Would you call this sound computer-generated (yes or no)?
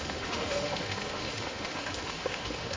yes